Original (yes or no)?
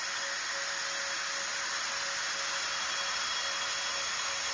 yes